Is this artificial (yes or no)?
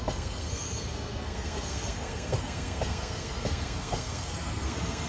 yes